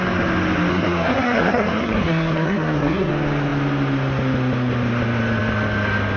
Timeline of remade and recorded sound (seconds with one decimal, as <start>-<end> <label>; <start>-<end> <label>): 0.0-0.7 recorded; 0.7-3.1 remade; 3.1-6.2 recorded